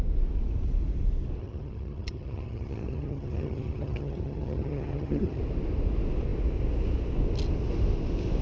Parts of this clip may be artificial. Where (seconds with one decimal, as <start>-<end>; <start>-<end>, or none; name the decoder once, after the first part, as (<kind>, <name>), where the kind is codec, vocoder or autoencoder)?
1.4-5.4 (vocoder, HiFi-GAN)